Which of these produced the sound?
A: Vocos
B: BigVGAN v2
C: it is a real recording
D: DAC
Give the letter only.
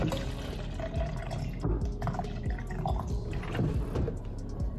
C